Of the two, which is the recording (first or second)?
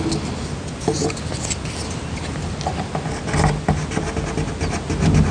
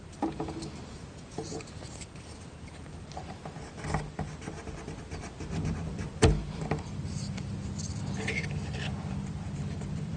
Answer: first